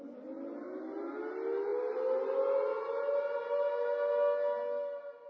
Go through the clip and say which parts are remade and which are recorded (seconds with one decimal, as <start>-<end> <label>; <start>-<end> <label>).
0.0-5.3 recorded